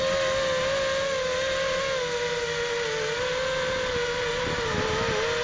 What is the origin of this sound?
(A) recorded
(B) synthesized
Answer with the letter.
A